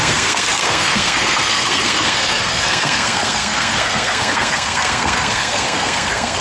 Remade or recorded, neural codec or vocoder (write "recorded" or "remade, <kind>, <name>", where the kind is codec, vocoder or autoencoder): remade, codec, SNAC